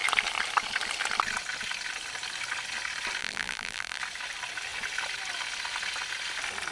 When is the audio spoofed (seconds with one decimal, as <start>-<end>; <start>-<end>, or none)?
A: 3.2-4.0